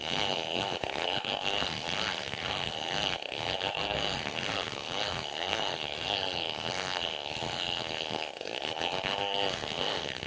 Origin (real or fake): fake